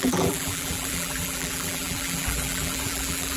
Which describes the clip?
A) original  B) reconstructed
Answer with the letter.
B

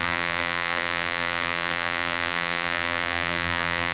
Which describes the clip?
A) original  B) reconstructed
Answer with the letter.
B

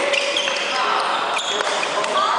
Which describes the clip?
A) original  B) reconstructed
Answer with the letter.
B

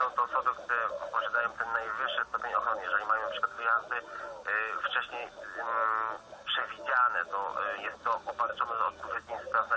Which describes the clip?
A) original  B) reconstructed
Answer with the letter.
A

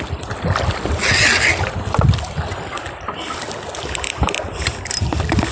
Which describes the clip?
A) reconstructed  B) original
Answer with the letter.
B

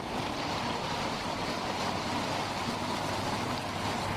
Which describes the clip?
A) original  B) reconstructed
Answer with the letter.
A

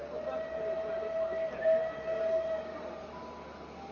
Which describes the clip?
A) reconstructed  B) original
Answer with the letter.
B